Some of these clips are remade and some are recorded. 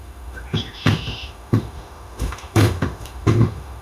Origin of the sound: remade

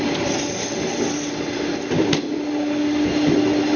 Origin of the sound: recorded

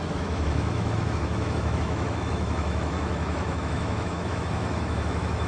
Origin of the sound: remade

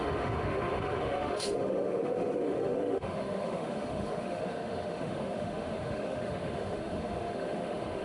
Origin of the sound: remade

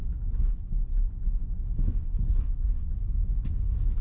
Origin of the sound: recorded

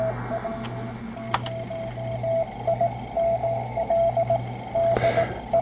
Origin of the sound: recorded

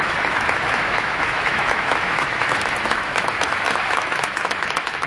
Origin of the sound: remade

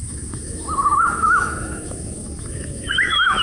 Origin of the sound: remade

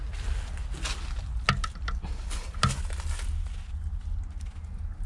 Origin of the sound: recorded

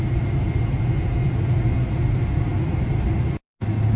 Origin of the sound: recorded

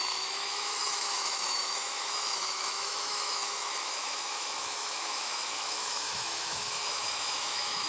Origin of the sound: remade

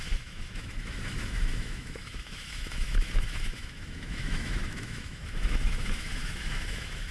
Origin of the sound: remade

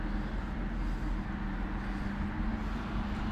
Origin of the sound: recorded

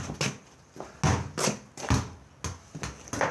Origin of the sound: recorded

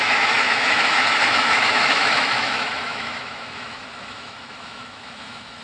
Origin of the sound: remade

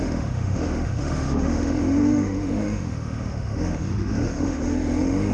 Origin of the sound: remade